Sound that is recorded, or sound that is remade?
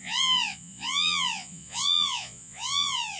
remade